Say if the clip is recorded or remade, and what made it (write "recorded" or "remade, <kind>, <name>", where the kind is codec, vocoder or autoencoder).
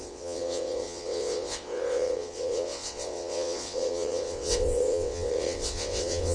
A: remade, vocoder, WaveNeXt